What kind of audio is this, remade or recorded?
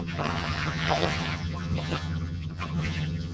remade